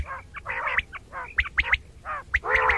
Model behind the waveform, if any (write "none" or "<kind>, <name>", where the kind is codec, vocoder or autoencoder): none